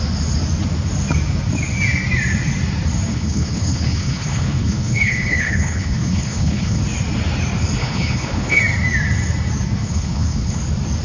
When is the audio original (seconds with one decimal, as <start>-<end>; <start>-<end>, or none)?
0.0-3.1; 6.8-7.8; 8.6-9.8; 10.6-11.0